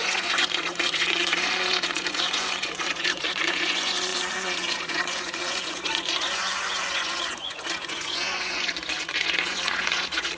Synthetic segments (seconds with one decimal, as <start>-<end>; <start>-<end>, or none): 0.0-10.4